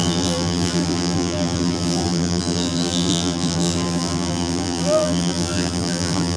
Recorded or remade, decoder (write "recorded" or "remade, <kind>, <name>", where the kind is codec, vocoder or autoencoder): remade, vocoder, BigVGAN v2